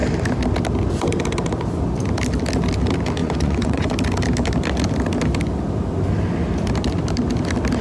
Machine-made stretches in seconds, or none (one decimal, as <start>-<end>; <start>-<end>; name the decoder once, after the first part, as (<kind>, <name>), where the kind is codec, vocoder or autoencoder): 3.2-3.9 (vocoder, Vocos)